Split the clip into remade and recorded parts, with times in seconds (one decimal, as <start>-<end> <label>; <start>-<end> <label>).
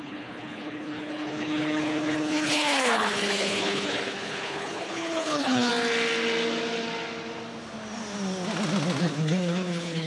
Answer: 0.0-5.7 remade; 5.7-9.0 recorded; 9.0-10.1 remade